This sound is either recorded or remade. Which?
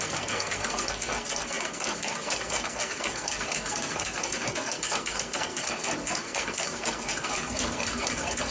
remade